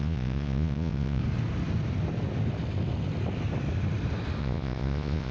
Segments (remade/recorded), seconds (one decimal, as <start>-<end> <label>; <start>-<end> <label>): 0.0-1.2 remade; 1.2-4.4 recorded; 4.4-5.3 remade